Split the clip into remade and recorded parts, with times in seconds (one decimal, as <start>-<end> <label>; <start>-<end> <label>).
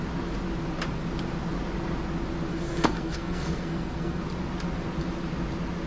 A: 0.0-2.5 recorded; 2.5-4.2 remade; 4.2-5.9 recorded